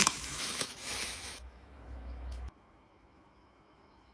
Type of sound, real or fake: fake